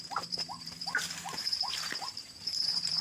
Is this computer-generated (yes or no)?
yes